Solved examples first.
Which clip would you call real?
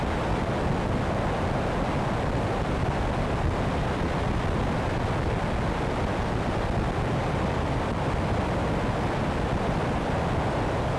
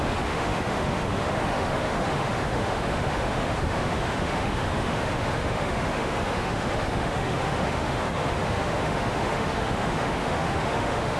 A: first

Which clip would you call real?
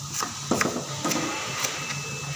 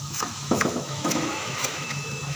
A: first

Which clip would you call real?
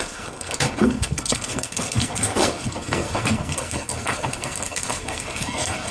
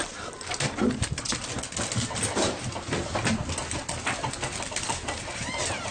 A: second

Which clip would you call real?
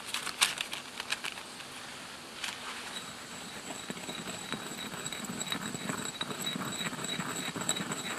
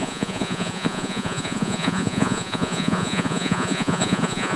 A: first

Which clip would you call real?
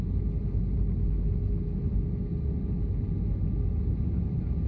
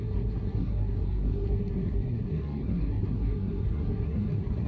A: first